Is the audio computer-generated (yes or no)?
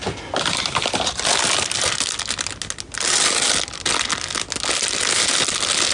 no